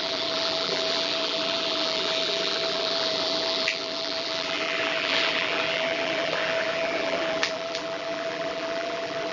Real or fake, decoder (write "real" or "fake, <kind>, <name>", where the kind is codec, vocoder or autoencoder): fake, vocoder, BigVGAN v2